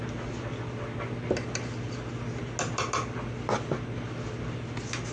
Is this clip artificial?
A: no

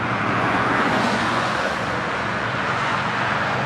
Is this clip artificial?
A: yes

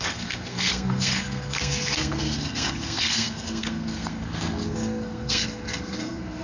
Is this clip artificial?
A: yes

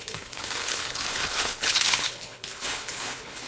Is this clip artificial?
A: yes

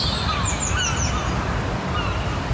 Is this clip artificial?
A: no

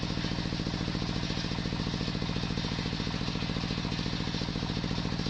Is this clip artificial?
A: no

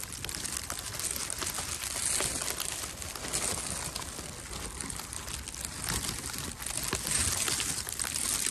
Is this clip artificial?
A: no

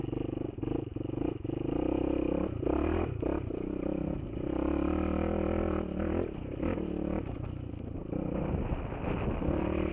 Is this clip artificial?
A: no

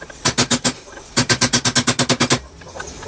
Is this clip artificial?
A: no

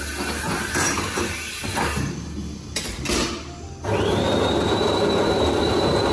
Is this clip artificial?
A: no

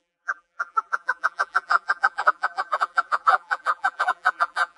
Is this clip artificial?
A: yes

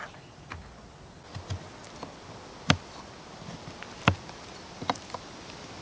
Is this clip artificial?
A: no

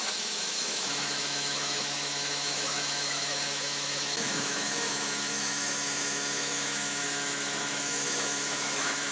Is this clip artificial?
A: yes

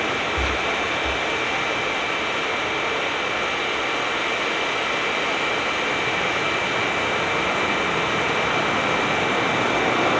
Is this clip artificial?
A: no